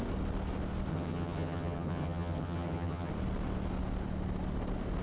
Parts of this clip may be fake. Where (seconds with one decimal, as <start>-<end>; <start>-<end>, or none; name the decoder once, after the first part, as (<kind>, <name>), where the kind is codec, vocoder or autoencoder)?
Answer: 0.9-3.1 (vocoder, HiFi-GAN)